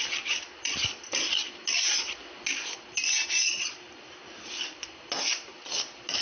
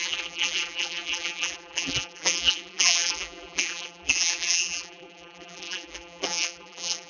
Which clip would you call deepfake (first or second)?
second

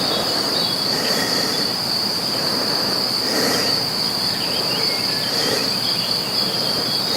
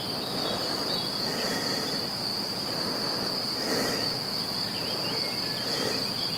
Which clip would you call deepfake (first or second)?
first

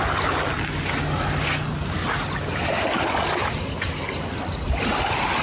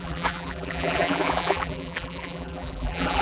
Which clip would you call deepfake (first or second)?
second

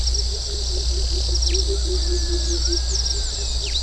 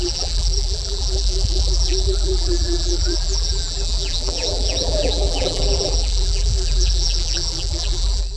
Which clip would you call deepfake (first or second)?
second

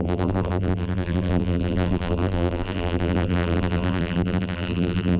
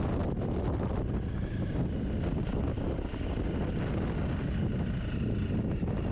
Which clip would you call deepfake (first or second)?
first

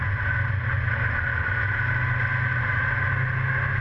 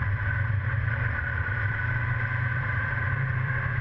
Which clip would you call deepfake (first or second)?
second